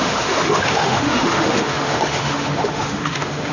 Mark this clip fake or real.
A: fake